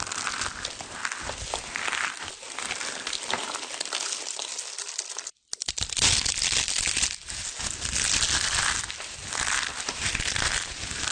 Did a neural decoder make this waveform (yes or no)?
no